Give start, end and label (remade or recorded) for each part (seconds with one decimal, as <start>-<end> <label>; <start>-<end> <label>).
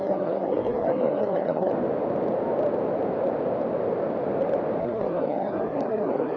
0.0-1.7 remade; 1.7-4.8 recorded; 4.8-6.4 remade